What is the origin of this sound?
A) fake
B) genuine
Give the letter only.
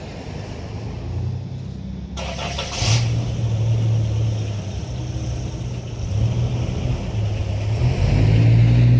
B